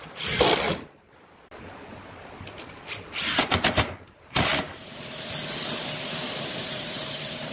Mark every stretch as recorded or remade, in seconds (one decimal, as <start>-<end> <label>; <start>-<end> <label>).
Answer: 0.0-6.6 recorded; 6.6-7.5 remade

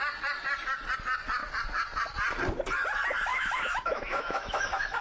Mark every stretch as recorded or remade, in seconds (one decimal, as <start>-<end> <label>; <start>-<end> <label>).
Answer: 0.0-3.3 recorded; 3.3-5.0 remade

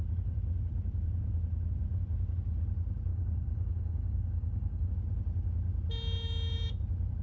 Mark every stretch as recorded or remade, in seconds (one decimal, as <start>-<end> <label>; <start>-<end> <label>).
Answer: 0.0-3.1 recorded; 3.1-4.9 remade; 4.9-7.2 recorded

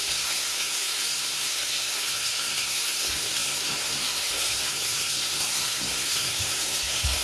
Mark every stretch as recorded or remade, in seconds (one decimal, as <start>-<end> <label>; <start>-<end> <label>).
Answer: 0.0-7.2 remade

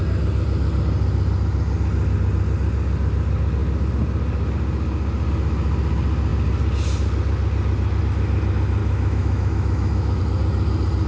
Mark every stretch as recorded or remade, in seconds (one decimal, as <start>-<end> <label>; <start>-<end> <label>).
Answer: 0.0-8.8 recorded; 8.8-10.2 remade; 10.2-11.1 recorded

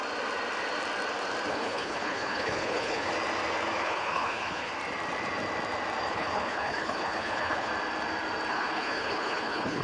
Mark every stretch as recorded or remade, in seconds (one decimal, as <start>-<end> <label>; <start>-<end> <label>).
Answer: 0.0-1.5 recorded; 1.5-3.1 remade; 3.1-3.8 recorded; 3.8-4.7 remade; 4.7-6.1 recorded; 6.1-7.7 remade; 7.7-8.5 recorded; 8.5-9.8 remade